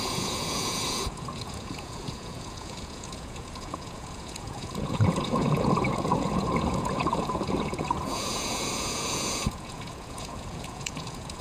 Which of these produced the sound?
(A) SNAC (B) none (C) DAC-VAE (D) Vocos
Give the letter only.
D